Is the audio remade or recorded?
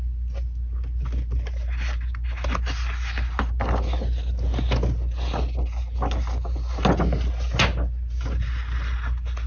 recorded